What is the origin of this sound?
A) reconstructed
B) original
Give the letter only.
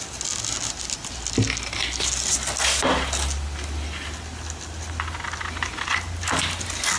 B